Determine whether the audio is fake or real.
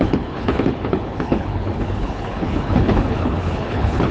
fake